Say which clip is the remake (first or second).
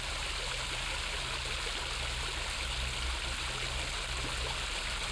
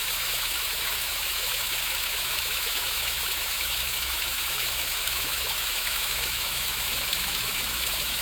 second